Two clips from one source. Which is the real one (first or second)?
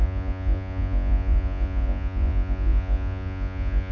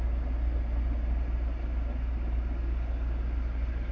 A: second